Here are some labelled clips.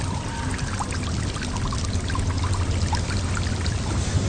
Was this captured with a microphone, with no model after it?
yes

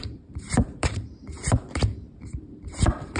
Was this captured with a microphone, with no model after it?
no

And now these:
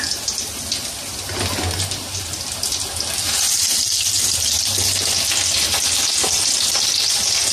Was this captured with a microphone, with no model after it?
yes